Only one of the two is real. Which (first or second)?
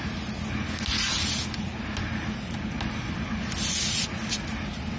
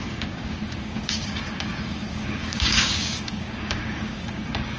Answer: first